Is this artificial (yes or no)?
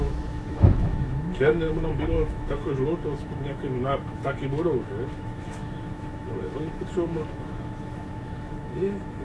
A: yes